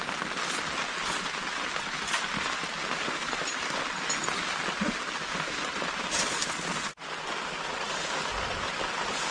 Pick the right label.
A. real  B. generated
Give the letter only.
A